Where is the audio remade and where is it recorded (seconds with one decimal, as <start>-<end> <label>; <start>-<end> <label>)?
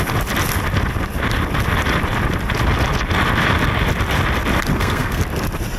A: 0.0-4.7 recorded; 4.7-5.2 remade; 5.2-5.8 recorded